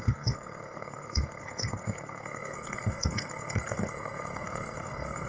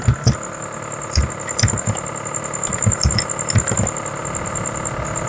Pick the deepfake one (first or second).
first